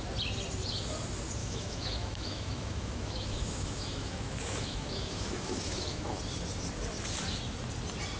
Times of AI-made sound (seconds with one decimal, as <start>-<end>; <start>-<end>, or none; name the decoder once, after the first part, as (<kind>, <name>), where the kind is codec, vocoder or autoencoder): 1.4-6.2 (autoencoder, DAC-VAE)